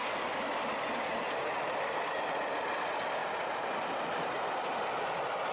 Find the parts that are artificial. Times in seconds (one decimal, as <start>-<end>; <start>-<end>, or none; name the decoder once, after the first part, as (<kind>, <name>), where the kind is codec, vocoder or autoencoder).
none